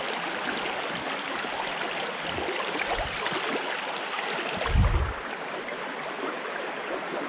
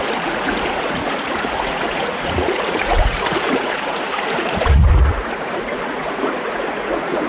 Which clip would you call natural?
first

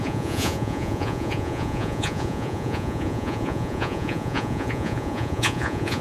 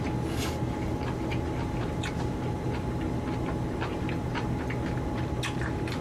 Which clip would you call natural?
second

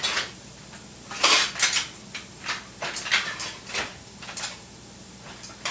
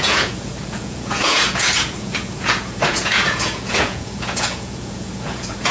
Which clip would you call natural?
first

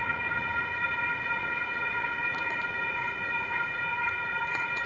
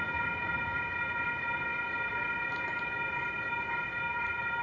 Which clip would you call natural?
second